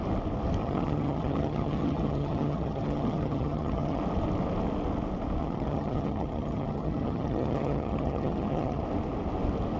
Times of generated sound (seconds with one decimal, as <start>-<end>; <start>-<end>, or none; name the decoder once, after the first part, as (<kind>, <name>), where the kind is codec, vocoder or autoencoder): 0.6-4.0 (vocoder, HiFi-GAN); 5.4-8.8